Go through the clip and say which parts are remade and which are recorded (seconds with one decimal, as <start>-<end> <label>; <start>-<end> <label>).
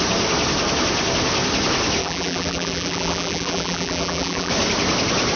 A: 0.0-2.0 recorded; 2.0-4.5 remade; 4.5-5.4 recorded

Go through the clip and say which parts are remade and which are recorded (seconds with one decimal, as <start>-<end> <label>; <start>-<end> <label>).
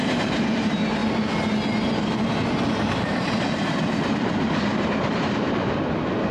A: 0.0-1.0 remade; 1.0-2.7 recorded; 2.7-6.3 remade